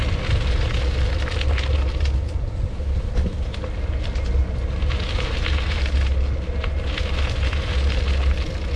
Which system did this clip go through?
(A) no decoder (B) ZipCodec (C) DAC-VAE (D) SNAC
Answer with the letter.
A